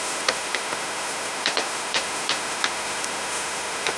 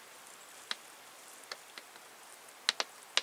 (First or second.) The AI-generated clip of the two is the first